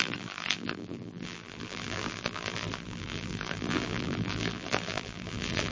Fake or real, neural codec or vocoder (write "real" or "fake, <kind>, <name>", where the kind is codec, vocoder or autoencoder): fake, vocoder, BigVGAN v2